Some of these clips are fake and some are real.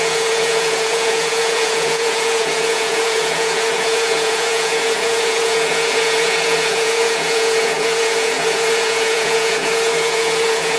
fake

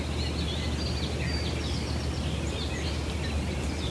real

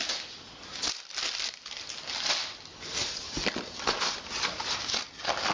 real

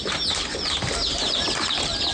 real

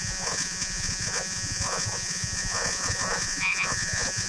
fake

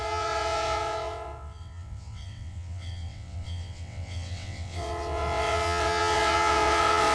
fake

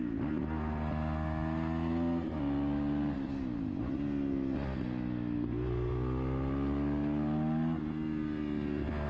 real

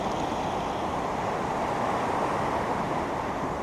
real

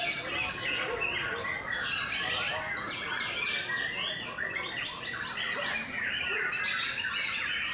real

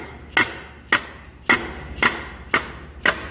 real